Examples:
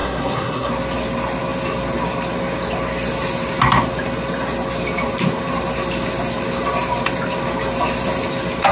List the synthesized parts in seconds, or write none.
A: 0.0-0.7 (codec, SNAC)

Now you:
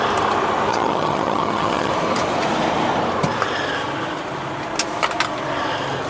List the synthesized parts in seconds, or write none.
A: 0.7-1.9 (vocoder, HiFi-GAN)

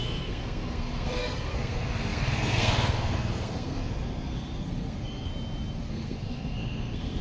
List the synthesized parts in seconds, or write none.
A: 0.0-5.3 (codec, SNAC); 5.9-7.2